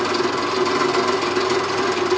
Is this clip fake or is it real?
real